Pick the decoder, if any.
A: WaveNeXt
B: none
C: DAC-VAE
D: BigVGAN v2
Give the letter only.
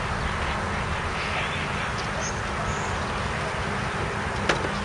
B